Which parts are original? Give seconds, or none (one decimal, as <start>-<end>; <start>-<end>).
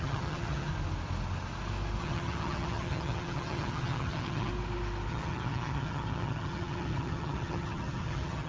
0.7-2.0; 4.5-5.1